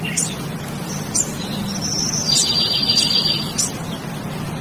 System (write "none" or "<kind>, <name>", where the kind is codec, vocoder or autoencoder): none